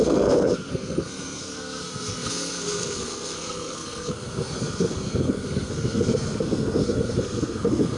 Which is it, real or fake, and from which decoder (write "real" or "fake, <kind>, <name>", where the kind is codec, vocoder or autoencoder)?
fake, codec, SNAC